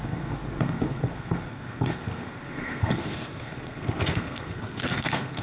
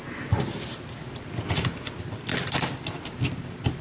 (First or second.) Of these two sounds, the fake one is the first